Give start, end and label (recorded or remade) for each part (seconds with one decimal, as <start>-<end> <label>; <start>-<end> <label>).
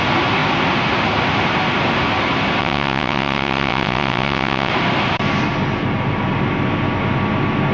0.0-2.6 recorded; 2.6-4.7 remade; 4.7-7.7 recorded